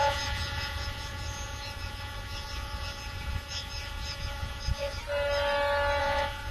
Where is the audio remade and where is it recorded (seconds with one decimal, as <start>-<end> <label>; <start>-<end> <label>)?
0.0-5.0 remade; 5.0-6.0 recorded; 6.0-6.5 remade